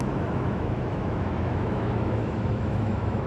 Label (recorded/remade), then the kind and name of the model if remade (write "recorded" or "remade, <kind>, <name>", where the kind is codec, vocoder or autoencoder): remade, autoencoder, DAC-VAE